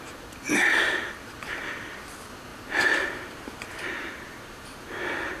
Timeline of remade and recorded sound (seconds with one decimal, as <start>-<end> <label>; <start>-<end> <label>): 0.0-2.5 recorded; 2.5-4.8 remade; 4.8-5.4 recorded